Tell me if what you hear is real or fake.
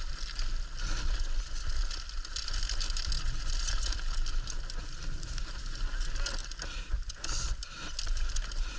real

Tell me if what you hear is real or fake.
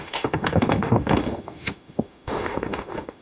fake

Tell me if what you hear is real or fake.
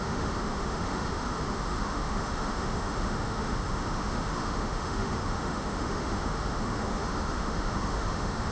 fake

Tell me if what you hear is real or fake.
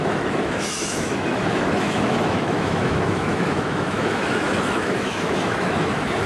fake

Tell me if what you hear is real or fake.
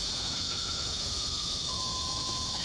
fake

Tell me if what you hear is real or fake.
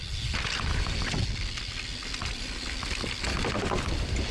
real